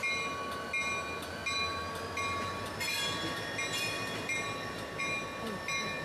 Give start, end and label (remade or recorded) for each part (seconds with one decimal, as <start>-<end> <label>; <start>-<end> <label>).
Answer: 0.0-6.0 recorded